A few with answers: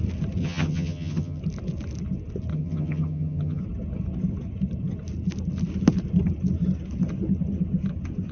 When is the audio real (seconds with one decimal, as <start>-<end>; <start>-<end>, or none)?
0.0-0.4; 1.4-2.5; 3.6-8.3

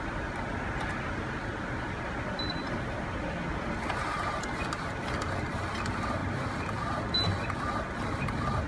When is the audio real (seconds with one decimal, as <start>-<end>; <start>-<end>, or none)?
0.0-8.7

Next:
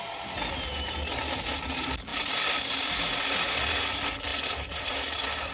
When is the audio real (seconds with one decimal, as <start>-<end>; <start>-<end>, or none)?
0.0-4.3; 5.0-5.5

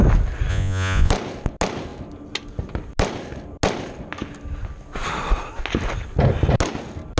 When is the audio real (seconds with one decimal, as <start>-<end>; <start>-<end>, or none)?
0.0-0.5; 1.1-7.2

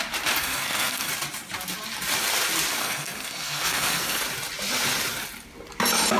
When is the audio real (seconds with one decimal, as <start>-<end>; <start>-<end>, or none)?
0.0-0.4; 1.1-2.8; 4.2-6.2

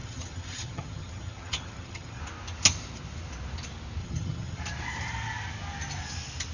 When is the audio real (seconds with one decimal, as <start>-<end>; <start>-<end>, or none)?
2.2-4.0; 4.6-6.5